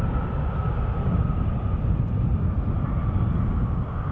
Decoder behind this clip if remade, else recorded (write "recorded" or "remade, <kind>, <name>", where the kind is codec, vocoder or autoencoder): recorded